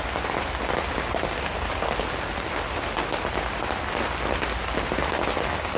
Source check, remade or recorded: recorded